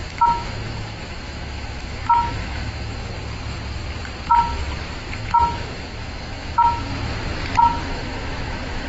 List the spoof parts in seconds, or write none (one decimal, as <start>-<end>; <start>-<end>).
0.0-3.0; 5.1-6.9; 7.6-8.9